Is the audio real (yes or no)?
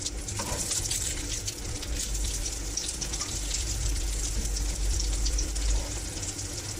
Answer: no